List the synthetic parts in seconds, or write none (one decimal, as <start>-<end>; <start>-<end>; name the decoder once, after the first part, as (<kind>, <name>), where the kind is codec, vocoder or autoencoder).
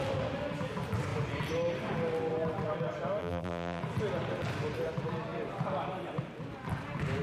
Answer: 3.2-3.8 (vocoder, BigVGAN v2)